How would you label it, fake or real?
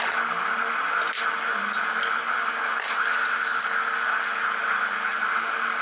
real